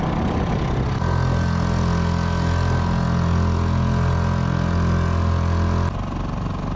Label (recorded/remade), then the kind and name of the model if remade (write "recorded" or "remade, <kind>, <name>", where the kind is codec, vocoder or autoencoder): recorded